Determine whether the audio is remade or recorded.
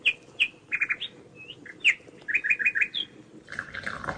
recorded